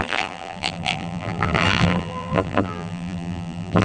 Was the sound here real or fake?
fake